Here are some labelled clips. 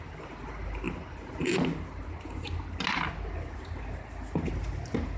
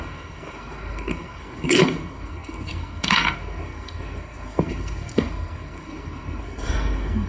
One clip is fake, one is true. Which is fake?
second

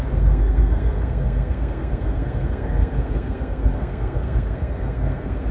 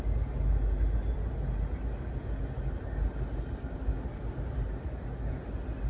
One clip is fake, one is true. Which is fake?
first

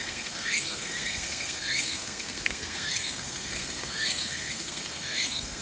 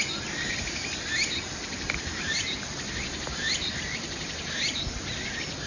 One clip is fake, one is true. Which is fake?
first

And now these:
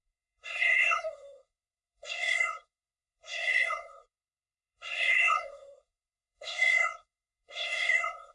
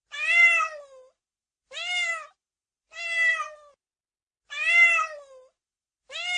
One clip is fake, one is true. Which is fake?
first